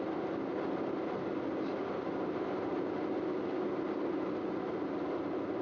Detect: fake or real real